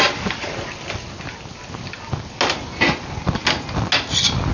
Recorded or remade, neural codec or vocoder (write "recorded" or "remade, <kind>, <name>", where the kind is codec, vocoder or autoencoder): recorded